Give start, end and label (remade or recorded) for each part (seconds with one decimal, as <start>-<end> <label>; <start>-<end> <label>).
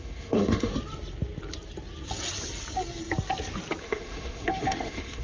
0.0-0.7 remade; 0.7-3.8 recorded; 3.8-5.2 remade